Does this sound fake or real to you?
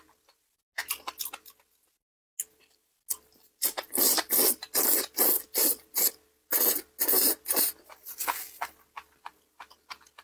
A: real